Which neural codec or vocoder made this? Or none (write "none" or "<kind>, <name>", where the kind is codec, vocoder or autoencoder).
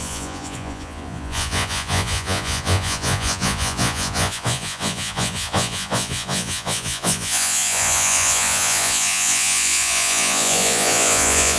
vocoder, Vocos